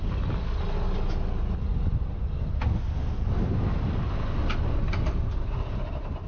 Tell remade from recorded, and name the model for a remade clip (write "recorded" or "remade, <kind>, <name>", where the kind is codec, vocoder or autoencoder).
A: recorded